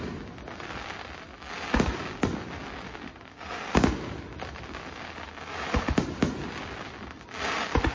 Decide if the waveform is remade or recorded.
recorded